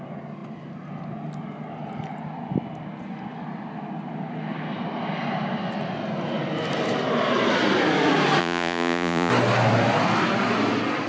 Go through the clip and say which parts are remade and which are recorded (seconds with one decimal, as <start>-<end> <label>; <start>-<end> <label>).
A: 0.0-8.4 recorded; 8.4-9.3 remade; 9.3-11.1 recorded